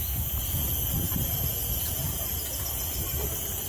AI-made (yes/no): yes